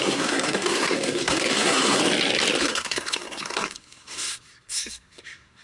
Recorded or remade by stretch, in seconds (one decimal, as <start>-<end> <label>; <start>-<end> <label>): 0.0-2.0 remade; 2.0-2.6 recorded; 2.6-5.6 remade